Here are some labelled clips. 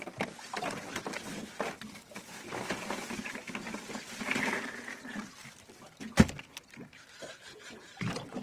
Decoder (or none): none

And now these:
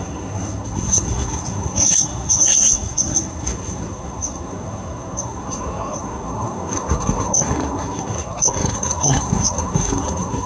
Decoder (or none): codec, SNAC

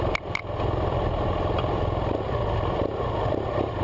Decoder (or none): none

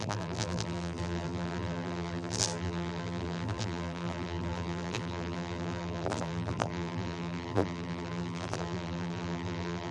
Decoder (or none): vocoder, BigVGAN v2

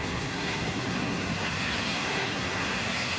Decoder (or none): codec, SNAC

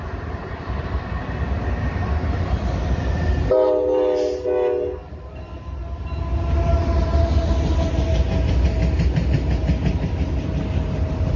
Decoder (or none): none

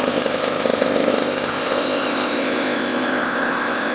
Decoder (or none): codec, ZipCodec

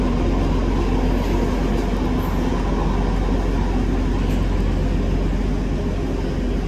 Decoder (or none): none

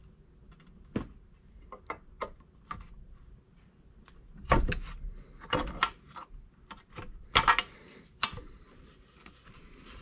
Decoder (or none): none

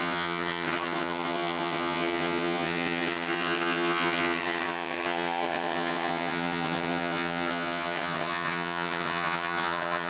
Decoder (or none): vocoder, HiFi-GAN